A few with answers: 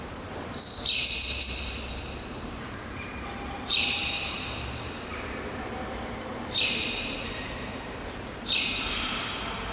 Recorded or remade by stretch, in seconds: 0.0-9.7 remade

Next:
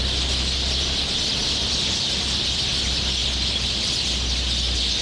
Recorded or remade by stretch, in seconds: 0.0-1.4 recorded; 1.4-2.7 remade; 2.7-5.0 recorded

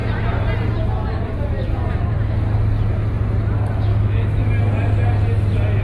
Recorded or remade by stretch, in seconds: 0.0-3.9 recorded; 3.9-4.5 remade; 4.5-5.8 recorded

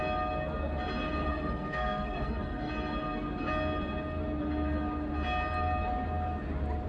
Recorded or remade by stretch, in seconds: 0.0-1.3 recorded; 1.3-2.7 remade; 2.7-6.9 recorded